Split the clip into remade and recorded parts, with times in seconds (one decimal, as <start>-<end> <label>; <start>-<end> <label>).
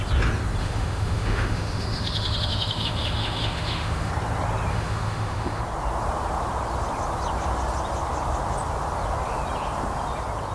0.0-0.6 recorded; 0.6-4.1 remade; 4.1-4.7 recorded; 4.7-5.6 remade; 5.6-10.5 recorded